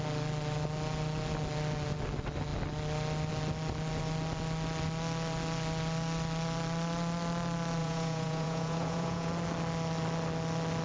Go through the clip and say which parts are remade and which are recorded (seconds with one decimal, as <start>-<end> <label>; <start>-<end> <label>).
0.0-7.8 recorded; 7.8-9.3 remade; 9.3-10.8 recorded